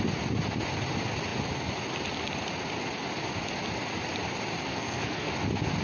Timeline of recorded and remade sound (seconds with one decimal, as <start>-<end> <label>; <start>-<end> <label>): 0.0-4.7 recorded; 4.7-5.3 remade; 5.3-5.8 recorded